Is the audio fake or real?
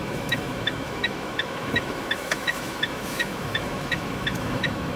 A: fake